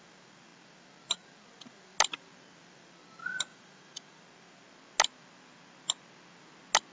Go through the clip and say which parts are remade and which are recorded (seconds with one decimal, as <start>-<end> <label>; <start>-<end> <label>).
0.0-3.5 recorded; 3.5-4.2 remade; 4.2-6.9 recorded